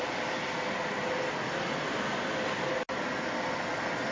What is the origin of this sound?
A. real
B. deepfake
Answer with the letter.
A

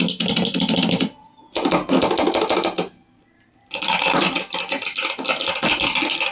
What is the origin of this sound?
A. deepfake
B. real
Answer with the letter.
B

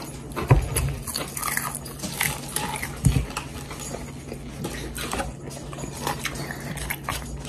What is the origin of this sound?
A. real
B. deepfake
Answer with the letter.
A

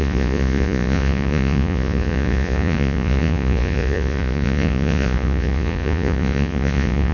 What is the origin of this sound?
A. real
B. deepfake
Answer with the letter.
B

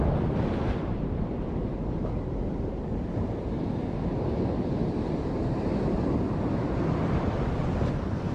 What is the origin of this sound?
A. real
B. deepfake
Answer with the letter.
A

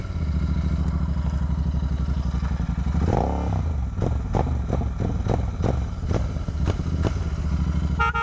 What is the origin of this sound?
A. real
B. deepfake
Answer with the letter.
A